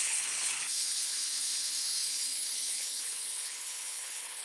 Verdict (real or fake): fake